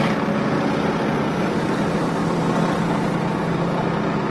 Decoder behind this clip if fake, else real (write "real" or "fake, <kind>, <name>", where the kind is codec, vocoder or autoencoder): real